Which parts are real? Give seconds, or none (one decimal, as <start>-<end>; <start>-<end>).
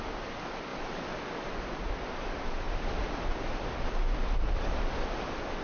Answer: none